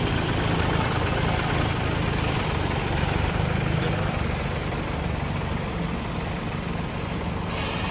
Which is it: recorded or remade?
recorded